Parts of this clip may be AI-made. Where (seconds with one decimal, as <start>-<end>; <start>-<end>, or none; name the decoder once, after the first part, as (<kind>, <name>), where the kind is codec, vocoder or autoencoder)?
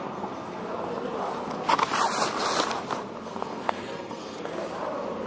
0.0-0.6 (codec, SNAC); 3.2-4.5